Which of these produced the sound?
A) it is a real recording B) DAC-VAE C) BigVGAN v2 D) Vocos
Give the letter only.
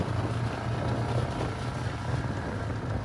A